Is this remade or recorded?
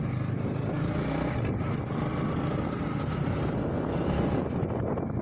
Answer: recorded